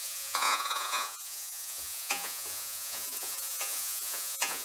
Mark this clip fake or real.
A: fake